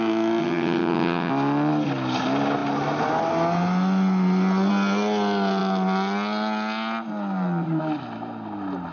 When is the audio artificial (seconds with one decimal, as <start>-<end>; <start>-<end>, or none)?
0.4-1.3